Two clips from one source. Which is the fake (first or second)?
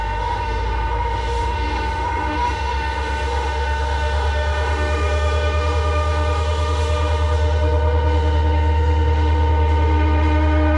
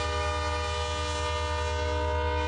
first